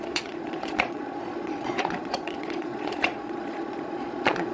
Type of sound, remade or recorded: remade